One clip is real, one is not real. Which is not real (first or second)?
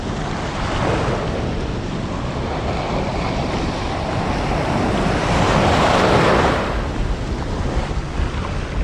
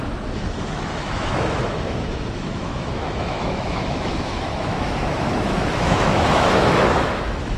second